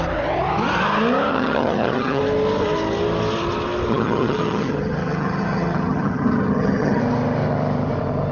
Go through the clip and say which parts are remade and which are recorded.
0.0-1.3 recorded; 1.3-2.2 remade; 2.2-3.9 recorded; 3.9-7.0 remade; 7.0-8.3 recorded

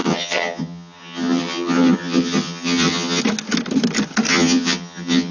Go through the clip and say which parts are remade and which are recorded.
0.0-3.2 remade; 3.2-4.3 recorded; 4.3-5.3 remade

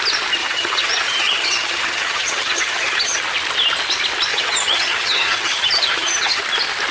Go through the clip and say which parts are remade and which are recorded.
0.0-0.4 recorded; 0.4-3.2 remade; 3.2-4.3 recorded; 4.3-6.4 remade; 6.4-6.9 recorded